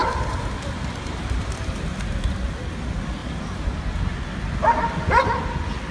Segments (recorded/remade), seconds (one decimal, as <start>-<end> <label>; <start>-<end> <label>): 0.0-1.5 remade; 1.5-3.2 recorded; 3.2-4.1 remade; 4.1-5.9 recorded